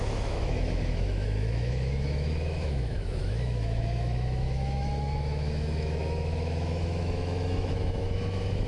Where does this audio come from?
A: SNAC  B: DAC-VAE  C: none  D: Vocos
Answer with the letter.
B